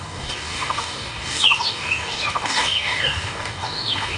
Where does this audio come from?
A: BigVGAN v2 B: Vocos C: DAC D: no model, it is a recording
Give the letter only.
C